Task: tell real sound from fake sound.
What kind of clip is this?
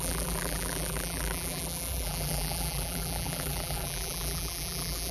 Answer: fake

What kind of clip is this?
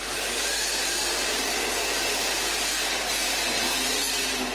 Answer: real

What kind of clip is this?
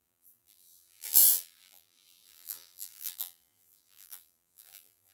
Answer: fake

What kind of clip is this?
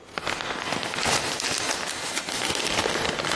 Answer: real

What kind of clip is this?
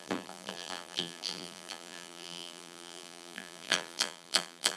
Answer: fake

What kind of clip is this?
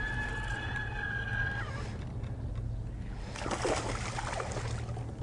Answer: real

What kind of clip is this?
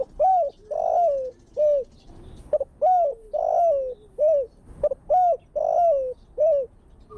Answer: real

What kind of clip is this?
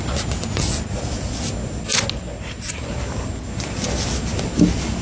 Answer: real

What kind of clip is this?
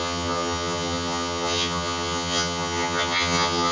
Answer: fake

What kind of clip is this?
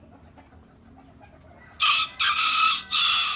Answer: real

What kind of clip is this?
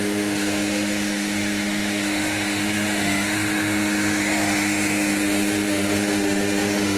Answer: fake